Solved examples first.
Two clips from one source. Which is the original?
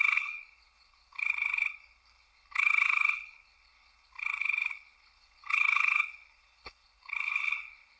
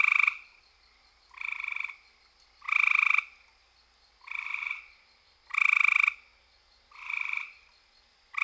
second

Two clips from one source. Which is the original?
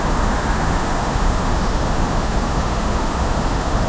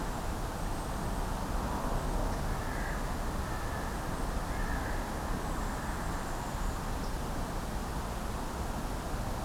second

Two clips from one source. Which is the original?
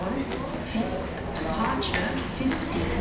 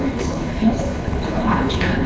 first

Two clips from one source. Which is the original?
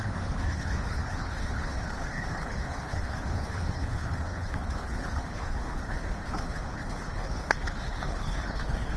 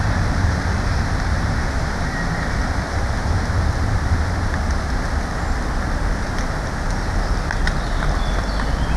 second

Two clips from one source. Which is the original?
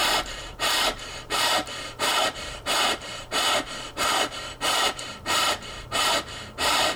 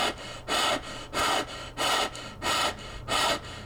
second